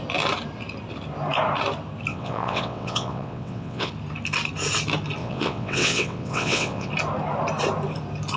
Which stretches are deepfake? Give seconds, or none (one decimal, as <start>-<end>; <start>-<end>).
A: 2.1-3.9; 5.2-6.9